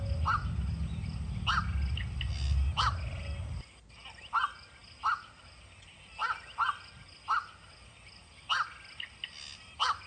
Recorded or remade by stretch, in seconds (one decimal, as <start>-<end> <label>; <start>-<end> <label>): 0.0-10.1 recorded